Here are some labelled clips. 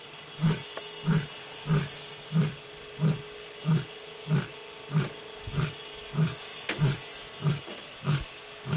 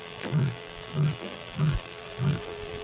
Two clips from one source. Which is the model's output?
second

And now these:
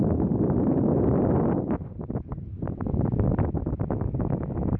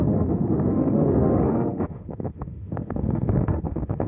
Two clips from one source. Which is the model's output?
second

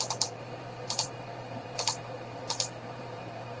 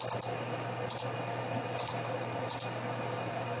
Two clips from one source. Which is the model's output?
first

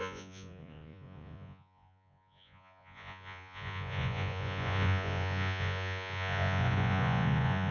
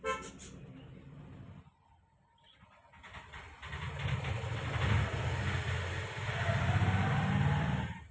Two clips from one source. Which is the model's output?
first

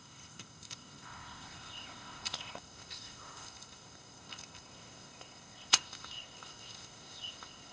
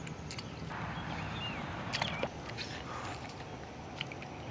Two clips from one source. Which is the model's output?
first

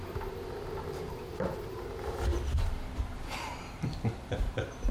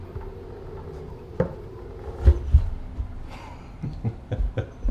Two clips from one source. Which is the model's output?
first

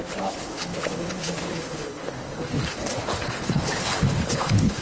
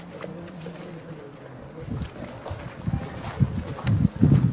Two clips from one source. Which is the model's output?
first